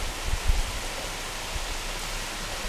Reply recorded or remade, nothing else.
recorded